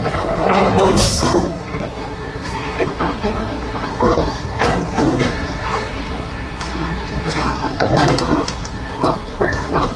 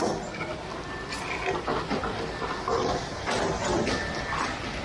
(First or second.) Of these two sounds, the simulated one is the first